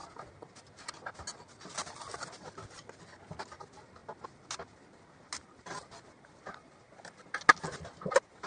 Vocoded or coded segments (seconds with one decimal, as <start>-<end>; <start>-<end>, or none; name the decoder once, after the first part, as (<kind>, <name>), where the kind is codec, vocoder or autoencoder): none